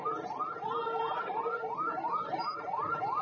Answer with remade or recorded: remade